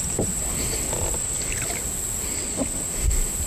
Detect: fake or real fake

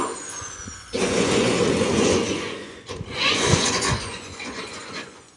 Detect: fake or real fake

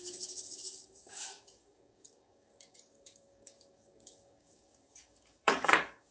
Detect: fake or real fake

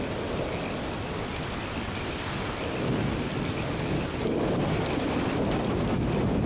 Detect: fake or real real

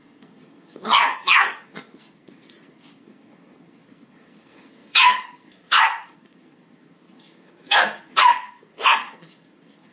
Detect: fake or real fake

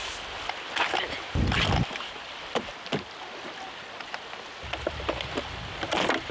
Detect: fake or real real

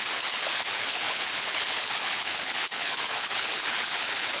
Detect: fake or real fake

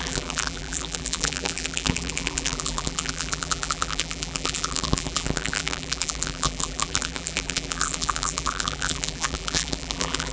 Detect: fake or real fake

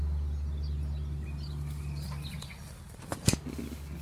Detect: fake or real real